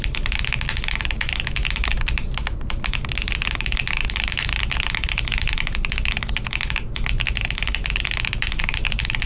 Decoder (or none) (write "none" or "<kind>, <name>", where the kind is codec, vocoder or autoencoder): none